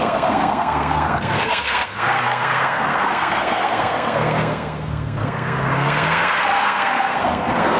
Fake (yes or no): yes